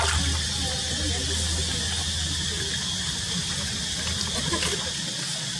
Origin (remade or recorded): recorded